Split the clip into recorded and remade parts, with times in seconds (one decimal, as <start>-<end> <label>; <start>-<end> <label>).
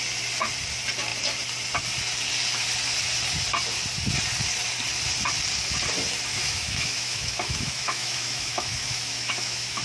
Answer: 0.0-6.3 recorded; 6.3-9.8 remade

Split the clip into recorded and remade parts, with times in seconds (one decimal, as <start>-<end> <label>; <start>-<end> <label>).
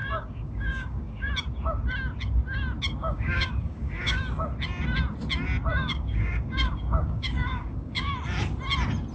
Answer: 0.0-1.3 remade; 1.3-3.0 recorded; 3.0-4.2 remade; 4.2-5.7 recorded; 5.7-8.1 remade; 8.1-9.1 recorded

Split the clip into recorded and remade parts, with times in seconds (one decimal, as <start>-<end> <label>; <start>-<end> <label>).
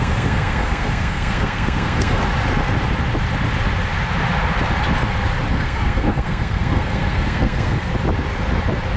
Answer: 0.0-2.2 remade; 2.2-5.5 recorded; 5.5-7.9 remade; 7.9-9.0 recorded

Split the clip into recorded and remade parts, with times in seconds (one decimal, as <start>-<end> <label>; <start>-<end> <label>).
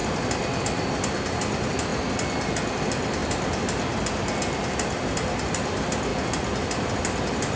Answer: 0.0-1.9 remade; 1.9-2.7 recorded; 2.7-3.2 remade; 3.2-4.4 recorded; 4.4-7.6 remade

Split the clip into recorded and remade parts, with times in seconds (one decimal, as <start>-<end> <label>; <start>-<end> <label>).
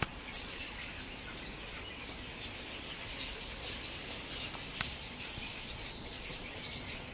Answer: 0.0-0.8 remade; 0.8-5.1 recorded; 5.1-7.1 remade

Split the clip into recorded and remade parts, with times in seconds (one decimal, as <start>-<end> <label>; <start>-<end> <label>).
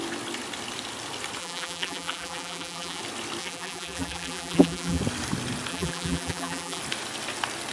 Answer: 0.0-1.4 recorded; 1.4-3.0 remade; 3.0-3.4 recorded; 3.4-5.0 remade; 5.0-5.7 recorded; 5.7-6.8 remade; 6.8-7.7 recorded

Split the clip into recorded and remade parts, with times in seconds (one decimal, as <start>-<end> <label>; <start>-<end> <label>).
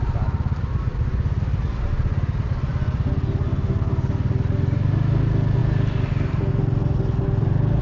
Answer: 0.0-7.8 recorded